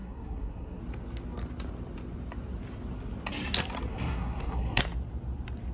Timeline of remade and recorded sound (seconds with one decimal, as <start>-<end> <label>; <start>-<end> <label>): 0.0-0.8 remade; 0.8-3.9 recorded; 3.9-4.8 remade; 4.8-5.7 recorded